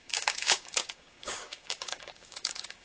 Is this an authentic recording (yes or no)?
no